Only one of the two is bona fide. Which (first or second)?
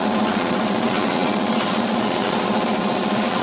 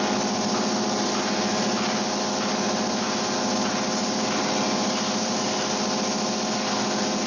second